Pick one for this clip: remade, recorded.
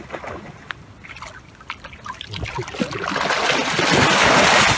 recorded